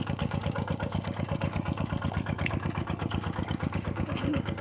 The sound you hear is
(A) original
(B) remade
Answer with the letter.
B